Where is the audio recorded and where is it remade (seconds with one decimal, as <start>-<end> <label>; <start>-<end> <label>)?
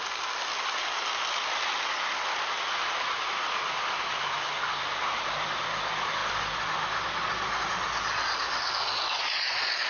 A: 0.0-9.9 recorded